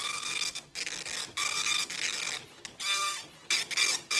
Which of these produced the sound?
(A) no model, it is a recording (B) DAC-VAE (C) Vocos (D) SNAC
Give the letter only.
A